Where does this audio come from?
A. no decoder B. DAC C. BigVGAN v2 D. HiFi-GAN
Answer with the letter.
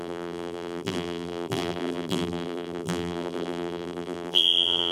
C